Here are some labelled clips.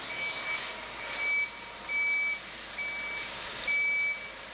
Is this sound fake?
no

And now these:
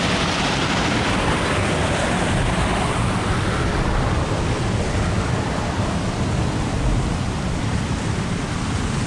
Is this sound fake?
no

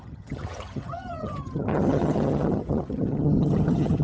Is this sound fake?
yes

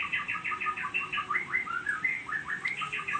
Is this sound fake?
yes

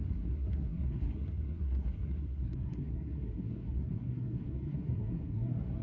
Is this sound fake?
yes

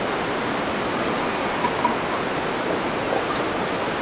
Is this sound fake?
no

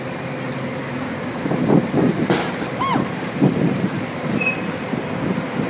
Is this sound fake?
yes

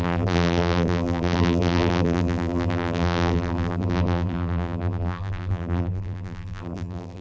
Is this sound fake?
yes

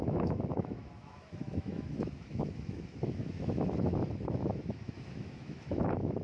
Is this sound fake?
yes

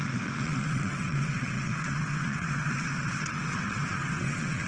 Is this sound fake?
yes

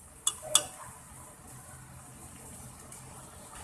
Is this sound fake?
no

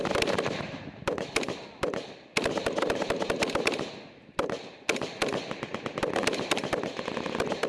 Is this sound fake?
no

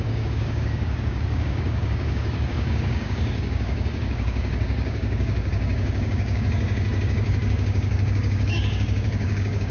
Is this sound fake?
yes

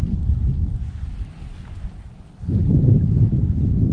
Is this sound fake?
no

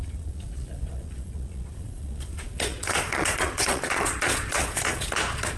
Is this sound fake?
yes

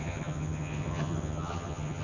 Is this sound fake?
yes